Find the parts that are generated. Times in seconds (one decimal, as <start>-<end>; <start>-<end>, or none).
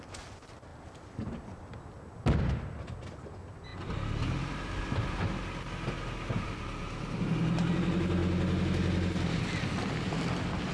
none